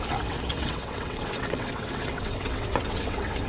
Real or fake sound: fake